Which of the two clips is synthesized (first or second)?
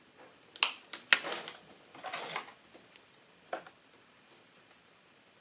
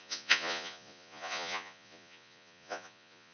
second